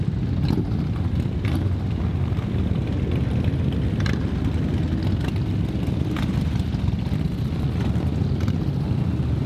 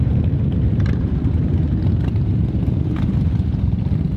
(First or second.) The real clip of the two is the first